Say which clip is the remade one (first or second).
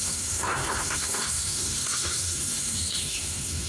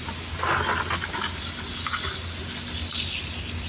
first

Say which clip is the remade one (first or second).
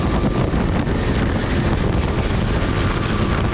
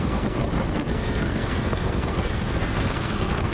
second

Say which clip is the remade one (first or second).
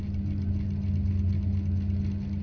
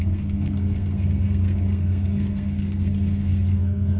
second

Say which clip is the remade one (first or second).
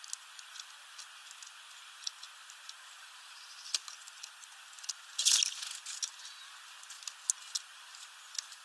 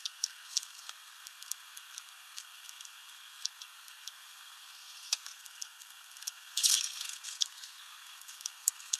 second